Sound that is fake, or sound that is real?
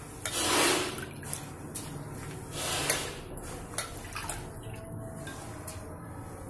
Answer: real